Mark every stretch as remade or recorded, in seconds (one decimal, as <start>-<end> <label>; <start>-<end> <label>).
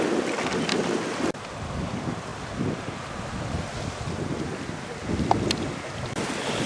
0.0-6.7 recorded